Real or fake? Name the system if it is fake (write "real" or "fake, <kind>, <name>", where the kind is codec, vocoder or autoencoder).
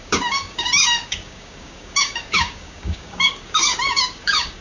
fake, codec, DAC